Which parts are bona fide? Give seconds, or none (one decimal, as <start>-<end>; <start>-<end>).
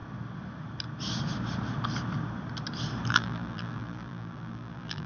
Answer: 0.0-3.1